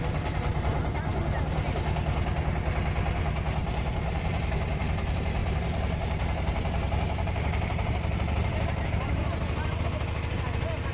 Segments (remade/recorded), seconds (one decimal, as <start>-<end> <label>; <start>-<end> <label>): 0.0-3.6 recorded; 3.6-4.4 remade; 4.4-5.4 recorded; 5.4-9.8 remade; 9.8-10.9 recorded